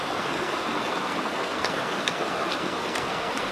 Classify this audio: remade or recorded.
remade